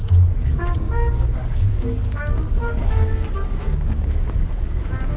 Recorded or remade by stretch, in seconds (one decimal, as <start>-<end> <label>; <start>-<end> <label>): 0.0-5.2 remade